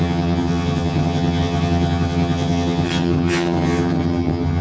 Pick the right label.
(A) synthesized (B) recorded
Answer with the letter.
A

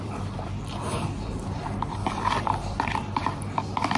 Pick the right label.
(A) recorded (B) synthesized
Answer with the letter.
B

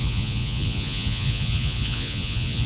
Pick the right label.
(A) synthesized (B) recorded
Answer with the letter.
A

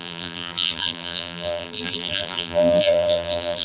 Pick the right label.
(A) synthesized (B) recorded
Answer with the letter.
A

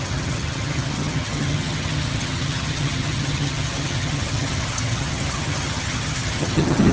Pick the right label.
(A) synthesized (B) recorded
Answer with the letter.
A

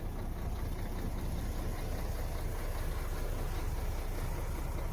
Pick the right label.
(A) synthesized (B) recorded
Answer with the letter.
B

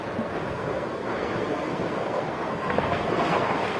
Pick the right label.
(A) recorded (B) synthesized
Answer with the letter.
B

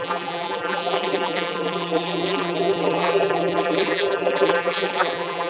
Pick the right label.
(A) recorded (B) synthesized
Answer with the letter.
B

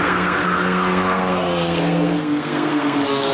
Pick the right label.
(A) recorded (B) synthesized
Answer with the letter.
B